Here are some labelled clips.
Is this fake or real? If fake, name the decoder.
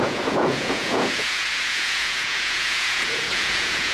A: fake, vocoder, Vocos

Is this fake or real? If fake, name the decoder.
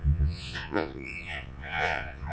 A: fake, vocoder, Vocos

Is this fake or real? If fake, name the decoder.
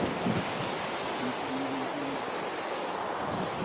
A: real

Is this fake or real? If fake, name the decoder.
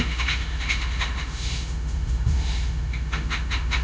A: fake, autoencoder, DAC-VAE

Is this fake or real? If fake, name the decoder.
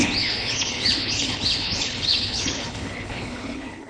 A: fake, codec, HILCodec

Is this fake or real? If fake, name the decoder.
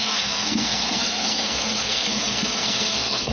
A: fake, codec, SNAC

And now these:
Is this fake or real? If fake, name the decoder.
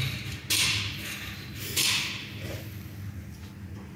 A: real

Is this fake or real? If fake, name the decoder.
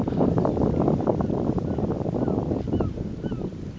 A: real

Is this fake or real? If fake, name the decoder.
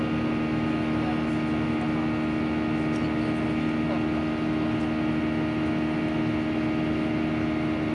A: real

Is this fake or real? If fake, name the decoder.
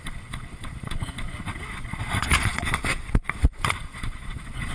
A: fake, vocoder, Vocos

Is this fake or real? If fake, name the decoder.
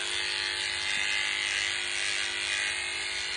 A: real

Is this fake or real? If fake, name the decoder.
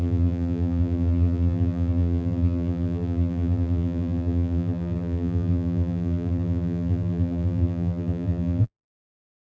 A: fake, vocoder, BigVGAN v2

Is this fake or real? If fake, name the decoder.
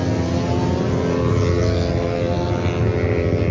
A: real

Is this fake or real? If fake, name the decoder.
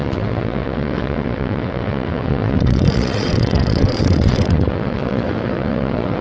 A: fake, vocoder, WaveNeXt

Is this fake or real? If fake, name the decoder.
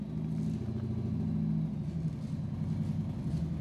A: real